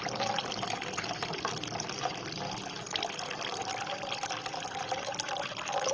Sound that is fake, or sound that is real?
real